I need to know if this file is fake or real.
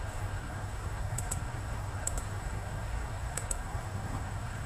fake